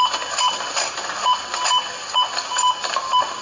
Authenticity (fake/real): real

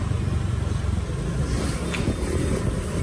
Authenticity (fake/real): real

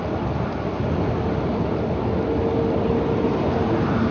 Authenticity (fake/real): real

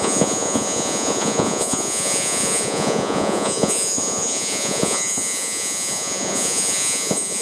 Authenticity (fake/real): fake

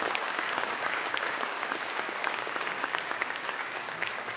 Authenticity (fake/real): fake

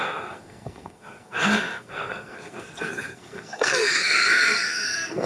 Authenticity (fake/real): fake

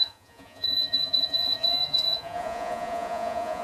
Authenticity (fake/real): fake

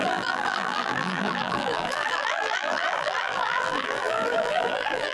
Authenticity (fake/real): fake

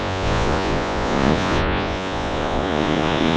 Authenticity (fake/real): fake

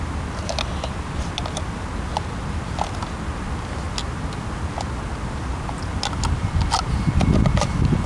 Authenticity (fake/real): real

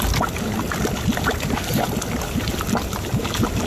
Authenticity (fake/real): real